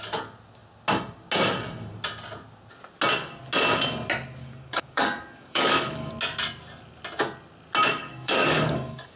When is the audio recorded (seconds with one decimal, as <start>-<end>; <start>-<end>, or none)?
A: 0.0-4.4; 6.1-8.0